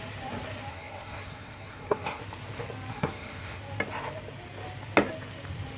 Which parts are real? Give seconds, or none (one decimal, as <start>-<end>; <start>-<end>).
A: 0.0-0.7; 2.2-2.9; 3.6-5.8